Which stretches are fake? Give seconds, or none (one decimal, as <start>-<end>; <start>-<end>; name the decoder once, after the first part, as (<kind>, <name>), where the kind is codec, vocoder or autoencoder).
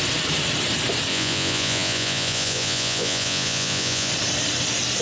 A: 1.1-4.1 (vocoder, Vocos)